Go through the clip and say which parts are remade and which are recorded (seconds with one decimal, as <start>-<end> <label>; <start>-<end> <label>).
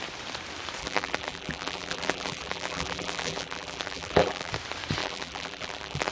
0.0-0.8 recorded; 0.8-4.5 remade; 4.5-5.0 recorded; 5.0-6.1 remade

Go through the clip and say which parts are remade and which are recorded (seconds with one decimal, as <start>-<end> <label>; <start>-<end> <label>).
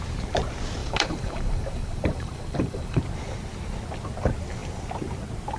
0.0-0.8 recorded; 0.8-3.0 remade; 3.0-5.6 recorded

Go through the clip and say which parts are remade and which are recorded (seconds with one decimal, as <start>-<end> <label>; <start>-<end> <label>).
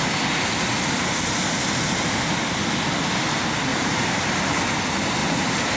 0.0-3.7 recorded; 3.7-4.6 remade; 4.6-5.2 recorded; 5.2-5.8 remade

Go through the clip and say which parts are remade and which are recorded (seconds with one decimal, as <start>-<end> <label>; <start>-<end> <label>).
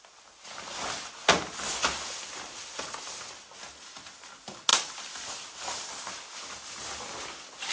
0.0-1.9 recorded; 1.9-2.8 remade; 2.8-4.7 recorded; 4.7-5.3 remade; 5.3-7.7 recorded